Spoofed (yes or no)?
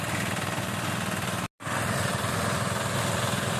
no